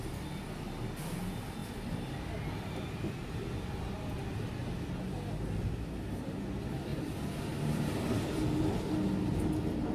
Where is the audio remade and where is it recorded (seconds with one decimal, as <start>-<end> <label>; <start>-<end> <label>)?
0.0-6.9 recorded; 6.9-8.0 remade; 8.0-9.9 recorded